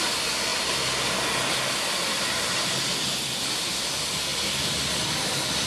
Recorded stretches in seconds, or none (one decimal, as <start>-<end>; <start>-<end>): 0.0-5.7